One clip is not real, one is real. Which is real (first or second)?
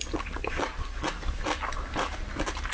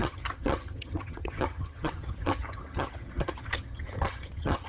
first